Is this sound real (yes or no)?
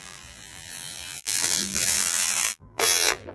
no